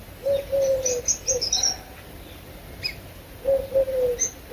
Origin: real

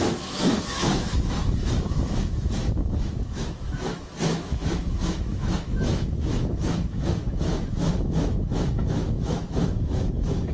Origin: fake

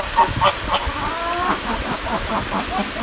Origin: real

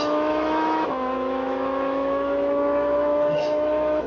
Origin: fake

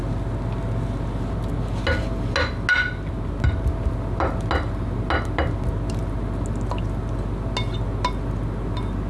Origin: real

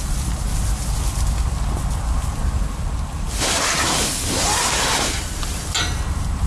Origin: real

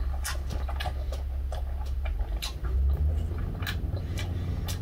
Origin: real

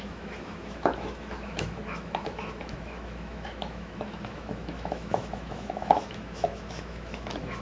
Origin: fake